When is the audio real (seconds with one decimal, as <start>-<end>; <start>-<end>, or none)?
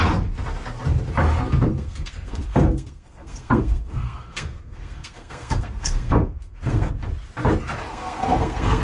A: 0.0-1.7; 6.9-7.9